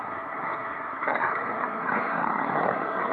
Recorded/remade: remade